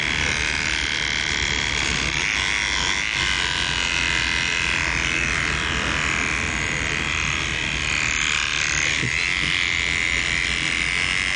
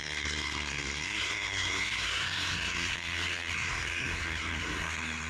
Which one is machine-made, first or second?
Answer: second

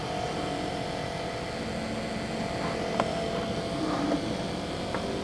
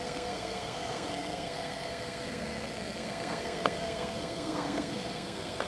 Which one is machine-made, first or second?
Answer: second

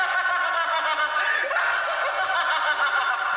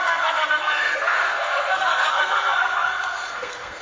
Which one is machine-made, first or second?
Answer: second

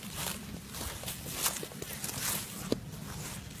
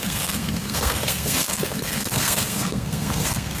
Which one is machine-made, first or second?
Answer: second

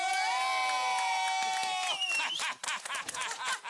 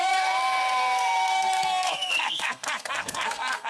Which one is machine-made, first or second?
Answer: second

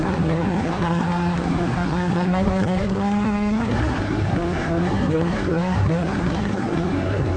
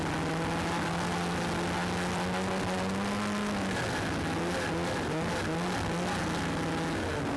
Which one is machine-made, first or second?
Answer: first